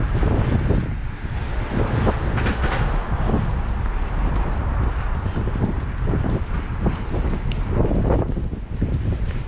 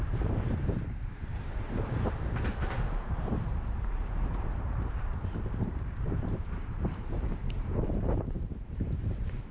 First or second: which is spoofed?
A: second